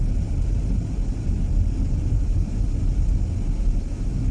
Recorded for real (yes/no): yes